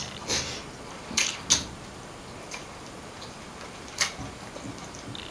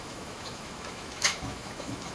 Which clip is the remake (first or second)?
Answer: second